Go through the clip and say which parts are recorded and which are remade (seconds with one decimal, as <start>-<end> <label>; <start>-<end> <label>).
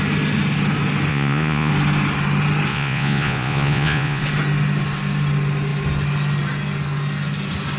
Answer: 0.0-1.1 recorded; 1.1-1.7 remade; 1.7-2.7 recorded; 2.7-4.2 remade; 4.2-7.8 recorded